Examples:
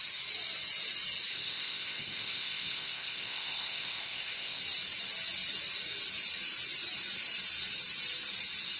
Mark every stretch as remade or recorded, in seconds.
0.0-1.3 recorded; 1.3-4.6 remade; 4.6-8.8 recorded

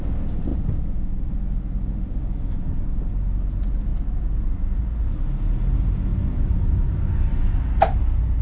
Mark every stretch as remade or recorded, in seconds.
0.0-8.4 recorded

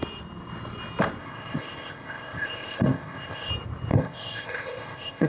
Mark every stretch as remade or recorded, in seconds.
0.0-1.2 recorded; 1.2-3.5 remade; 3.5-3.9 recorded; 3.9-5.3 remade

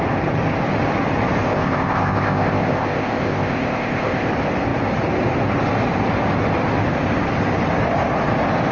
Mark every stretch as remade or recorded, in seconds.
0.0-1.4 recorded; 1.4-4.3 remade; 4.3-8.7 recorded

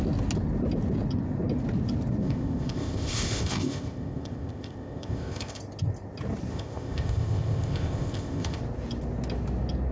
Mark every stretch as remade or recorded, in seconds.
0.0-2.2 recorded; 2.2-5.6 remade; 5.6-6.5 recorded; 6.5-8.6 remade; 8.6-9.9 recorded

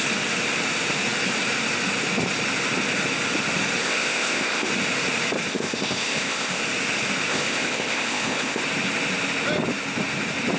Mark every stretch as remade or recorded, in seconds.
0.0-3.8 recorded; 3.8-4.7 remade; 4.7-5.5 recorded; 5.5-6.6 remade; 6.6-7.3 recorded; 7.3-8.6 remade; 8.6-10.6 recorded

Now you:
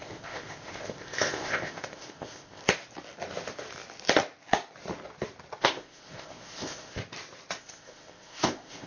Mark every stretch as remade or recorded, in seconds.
0.0-2.6 remade; 2.6-5.6 recorded; 5.6-7.0 remade; 7.0-7.6 recorded; 7.6-8.9 remade